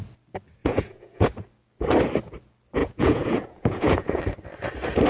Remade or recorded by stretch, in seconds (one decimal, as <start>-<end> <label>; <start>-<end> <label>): 0.0-0.6 recorded; 0.6-1.3 remade; 1.3-2.8 recorded; 2.8-4.2 remade; 4.2-5.1 recorded